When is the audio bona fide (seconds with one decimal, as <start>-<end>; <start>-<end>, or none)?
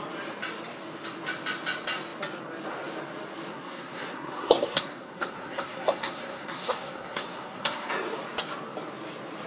0.0-3.5; 7.9-9.5